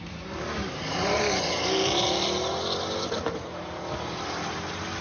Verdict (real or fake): real